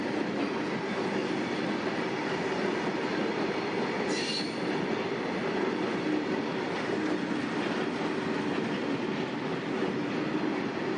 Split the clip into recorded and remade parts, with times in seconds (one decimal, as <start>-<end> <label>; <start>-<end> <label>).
0.0-11.0 recorded